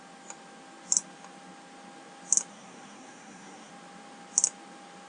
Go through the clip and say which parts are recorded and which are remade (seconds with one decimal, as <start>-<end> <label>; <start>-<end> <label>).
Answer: 0.0-2.5 recorded; 2.5-3.7 remade; 3.7-5.1 recorded